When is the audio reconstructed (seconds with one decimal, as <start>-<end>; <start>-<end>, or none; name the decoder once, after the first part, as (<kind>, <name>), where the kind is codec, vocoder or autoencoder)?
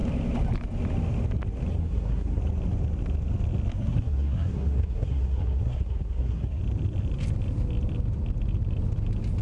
1.7-2.4 (codec, SNAC); 3.7-6.6